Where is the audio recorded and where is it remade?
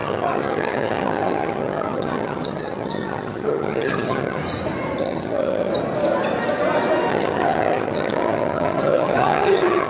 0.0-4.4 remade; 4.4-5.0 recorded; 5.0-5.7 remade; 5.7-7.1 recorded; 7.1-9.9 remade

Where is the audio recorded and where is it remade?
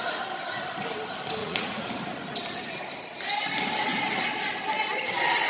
0.0-1.4 recorded; 1.4-1.9 remade; 1.9-5.5 recorded